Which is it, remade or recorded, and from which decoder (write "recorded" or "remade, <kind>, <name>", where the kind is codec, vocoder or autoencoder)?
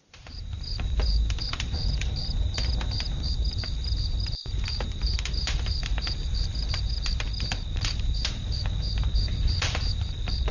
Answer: remade, vocoder, BigVGAN v2